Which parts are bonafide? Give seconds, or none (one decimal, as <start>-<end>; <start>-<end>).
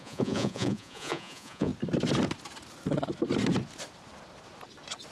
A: 1.7-5.1